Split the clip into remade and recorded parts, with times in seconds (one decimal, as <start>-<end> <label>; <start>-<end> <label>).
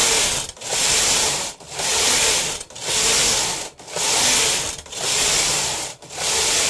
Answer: 0.0-0.6 recorded; 0.6-1.9 remade; 1.9-4.7 recorded; 4.7-6.7 remade